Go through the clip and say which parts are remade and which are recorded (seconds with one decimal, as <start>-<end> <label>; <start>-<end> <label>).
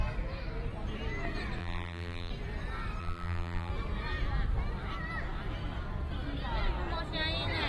0.0-1.6 recorded; 1.6-2.3 remade; 2.3-3.0 recorded; 3.0-3.7 remade; 3.7-7.7 recorded